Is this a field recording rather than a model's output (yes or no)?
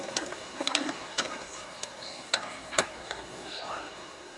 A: no